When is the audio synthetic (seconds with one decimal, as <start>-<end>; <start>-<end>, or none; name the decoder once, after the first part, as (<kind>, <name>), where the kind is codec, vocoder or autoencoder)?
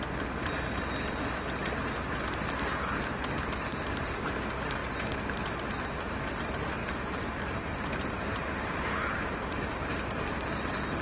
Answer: 3.7-4.3 (vocoder, BigVGAN v2); 6.8-11.0